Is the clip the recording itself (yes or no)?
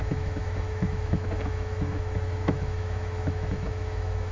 no